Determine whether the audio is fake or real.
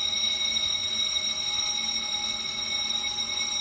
real